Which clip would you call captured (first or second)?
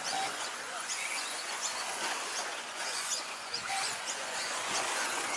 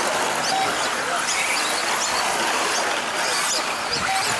second